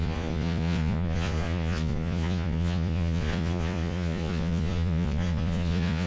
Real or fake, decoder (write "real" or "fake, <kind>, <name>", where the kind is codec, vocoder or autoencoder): fake, vocoder, Vocos